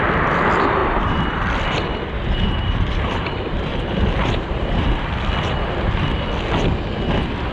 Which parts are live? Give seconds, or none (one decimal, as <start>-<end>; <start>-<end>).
0.0-0.8; 1.4-2.6; 4.7-7.5